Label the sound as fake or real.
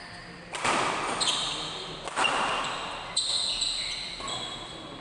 real